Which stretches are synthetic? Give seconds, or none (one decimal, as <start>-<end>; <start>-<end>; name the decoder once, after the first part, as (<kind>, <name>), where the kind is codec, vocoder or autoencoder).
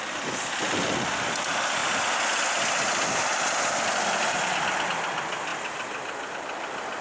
5.5-6.3 (vocoder, BigVGAN v2)